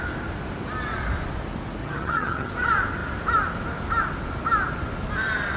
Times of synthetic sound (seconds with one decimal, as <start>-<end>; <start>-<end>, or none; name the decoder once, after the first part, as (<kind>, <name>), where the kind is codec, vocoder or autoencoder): 1.8-2.5 (vocoder, HiFi-GAN)